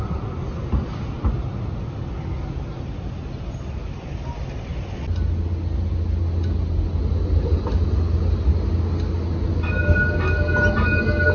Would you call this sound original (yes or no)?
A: yes